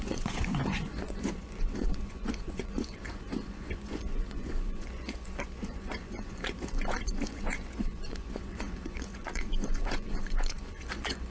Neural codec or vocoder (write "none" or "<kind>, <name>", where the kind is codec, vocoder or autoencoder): vocoder, Vocos